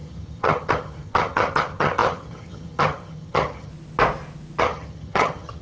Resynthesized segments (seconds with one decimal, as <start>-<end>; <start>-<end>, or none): 0.0-3.7; 4.6-5.6